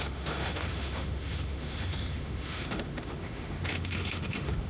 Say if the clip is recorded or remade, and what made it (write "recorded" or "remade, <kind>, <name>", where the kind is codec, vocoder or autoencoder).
remade, autoencoder, DAC-VAE